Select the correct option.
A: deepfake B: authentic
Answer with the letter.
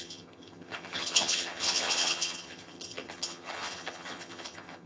A